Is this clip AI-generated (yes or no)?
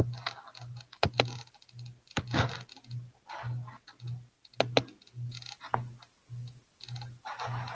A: no